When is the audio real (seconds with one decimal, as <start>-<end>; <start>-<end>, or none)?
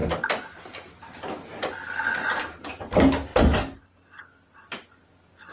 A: 0.0-5.5